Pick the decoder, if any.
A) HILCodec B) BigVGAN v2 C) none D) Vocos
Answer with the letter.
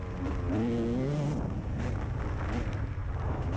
C